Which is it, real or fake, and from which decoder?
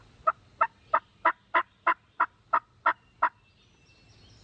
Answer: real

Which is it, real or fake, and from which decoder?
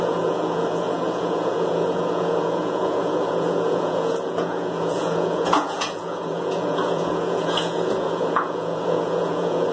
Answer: fake, vocoder, Vocos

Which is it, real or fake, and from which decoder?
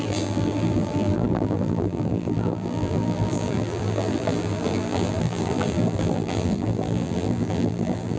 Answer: fake, vocoder, BigVGAN v2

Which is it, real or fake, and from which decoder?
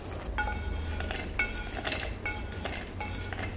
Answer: real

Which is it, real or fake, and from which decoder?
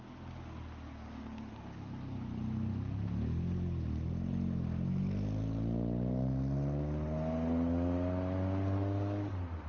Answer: real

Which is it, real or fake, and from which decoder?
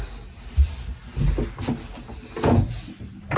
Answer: real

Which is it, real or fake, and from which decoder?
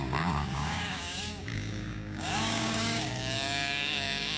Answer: fake, codec, DAC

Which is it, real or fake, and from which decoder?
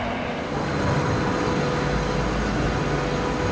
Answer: real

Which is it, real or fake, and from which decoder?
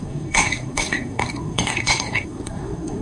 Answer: fake, codec, SNAC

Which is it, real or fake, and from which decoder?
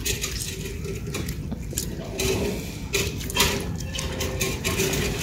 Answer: real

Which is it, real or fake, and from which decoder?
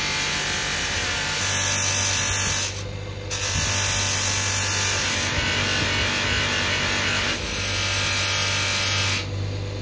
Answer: real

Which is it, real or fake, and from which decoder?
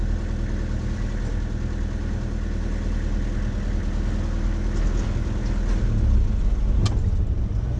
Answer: real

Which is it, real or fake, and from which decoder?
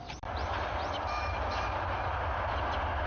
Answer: real